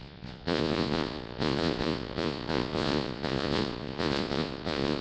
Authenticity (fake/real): fake